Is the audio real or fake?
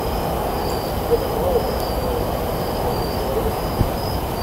real